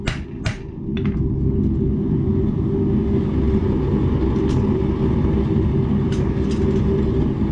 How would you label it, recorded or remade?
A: recorded